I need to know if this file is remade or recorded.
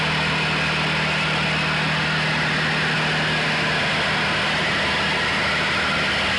recorded